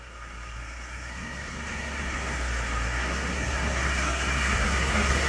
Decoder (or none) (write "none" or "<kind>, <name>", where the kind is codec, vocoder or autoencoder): codec, SNAC